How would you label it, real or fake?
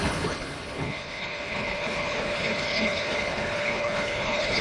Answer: fake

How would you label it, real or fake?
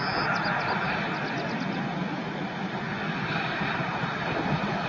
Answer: real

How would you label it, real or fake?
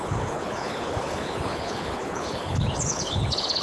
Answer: fake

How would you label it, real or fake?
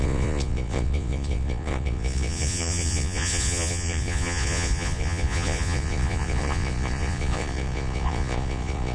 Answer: fake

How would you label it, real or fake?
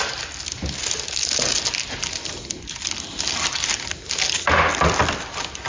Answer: real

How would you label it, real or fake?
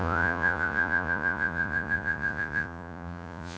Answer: fake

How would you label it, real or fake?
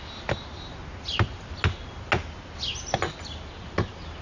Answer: real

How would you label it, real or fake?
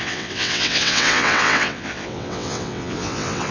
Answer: fake